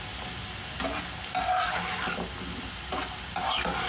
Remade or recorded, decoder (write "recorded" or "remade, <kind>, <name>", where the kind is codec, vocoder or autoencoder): recorded